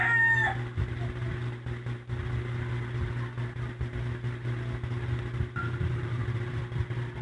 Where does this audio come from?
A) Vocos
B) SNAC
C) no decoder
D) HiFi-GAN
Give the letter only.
C